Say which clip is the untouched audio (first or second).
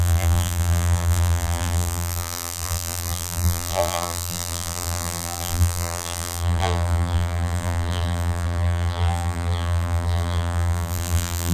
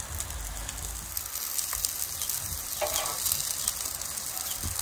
second